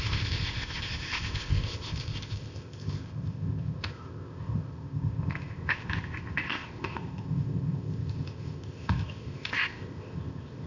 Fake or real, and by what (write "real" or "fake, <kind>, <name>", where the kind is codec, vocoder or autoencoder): fake, codec, ZipCodec